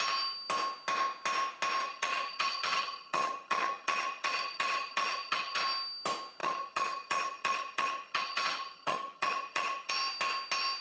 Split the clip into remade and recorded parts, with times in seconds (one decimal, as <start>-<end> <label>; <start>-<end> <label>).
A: 0.0-1.8 recorded; 1.8-5.6 remade; 5.6-6.4 recorded; 6.4-9.9 remade; 9.9-10.8 recorded